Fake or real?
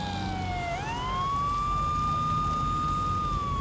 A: real